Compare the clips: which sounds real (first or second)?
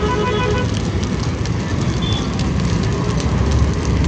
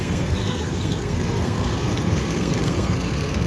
first